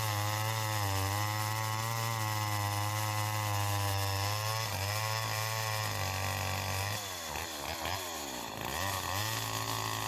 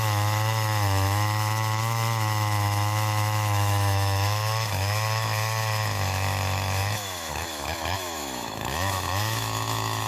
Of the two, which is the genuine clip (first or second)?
first